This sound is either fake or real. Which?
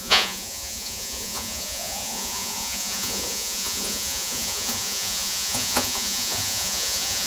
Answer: fake